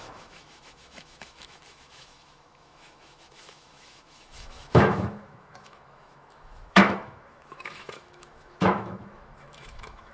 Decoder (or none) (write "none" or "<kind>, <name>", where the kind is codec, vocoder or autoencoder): autoencoder, DAC-VAE